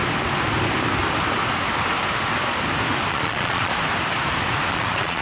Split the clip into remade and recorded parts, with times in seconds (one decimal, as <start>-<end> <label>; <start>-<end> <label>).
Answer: 0.0-3.1 recorded; 3.1-3.7 remade; 3.7-4.7 recorded; 4.7-5.2 remade